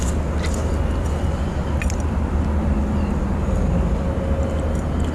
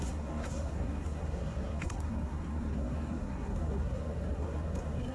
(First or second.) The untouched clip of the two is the first